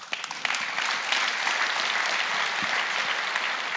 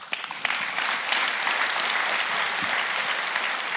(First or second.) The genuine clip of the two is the first